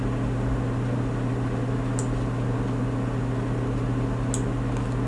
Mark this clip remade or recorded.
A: recorded